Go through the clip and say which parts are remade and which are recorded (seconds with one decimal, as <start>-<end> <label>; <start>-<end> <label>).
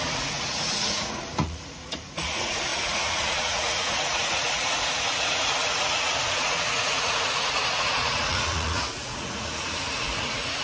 0.0-10.6 remade